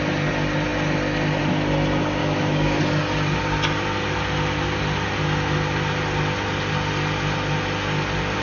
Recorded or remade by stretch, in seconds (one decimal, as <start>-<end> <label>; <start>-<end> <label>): 0.0-2.2 recorded; 2.2-2.8 remade; 2.8-8.4 recorded